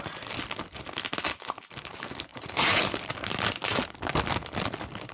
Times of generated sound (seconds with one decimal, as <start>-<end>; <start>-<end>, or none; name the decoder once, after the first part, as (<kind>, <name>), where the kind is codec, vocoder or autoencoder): 2.3-2.8 (vocoder, Vocos)

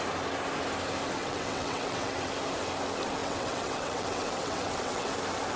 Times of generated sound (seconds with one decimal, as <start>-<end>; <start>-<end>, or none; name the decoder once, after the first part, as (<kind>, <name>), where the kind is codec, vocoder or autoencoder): 1.2-2.3 (vocoder, WaveNeXt); 3.2-5.1

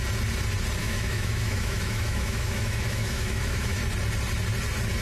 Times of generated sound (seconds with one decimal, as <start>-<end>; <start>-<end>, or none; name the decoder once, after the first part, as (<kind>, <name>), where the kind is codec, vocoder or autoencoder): 0.8-3.8 (autoencoder, DAC-VAE)

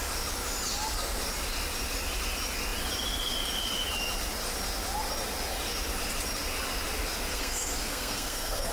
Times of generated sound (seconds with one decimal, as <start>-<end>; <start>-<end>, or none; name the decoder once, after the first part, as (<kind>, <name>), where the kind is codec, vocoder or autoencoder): 7.3-8.7 (codec, SNAC)

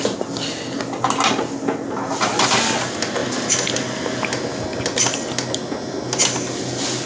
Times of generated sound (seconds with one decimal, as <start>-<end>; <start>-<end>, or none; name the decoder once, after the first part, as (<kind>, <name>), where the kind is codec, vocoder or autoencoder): none

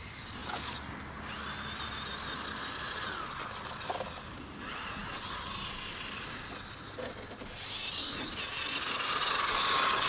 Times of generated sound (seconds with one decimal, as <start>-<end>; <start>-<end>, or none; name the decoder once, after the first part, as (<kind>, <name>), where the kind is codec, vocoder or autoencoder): none

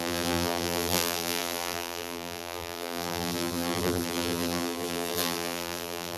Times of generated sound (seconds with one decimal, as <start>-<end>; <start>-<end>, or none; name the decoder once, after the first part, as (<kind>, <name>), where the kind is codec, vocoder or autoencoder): 0.0-6.2 (vocoder, BigVGAN v2)